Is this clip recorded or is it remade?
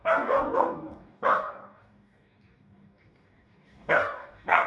remade